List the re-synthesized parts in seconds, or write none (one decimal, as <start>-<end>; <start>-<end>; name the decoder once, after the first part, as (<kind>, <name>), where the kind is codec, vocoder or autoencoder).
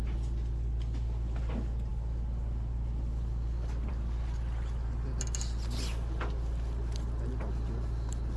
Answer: none